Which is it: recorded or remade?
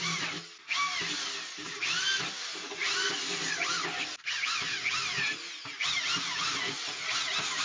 recorded